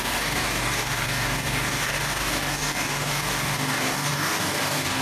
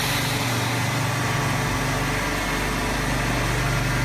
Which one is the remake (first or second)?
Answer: first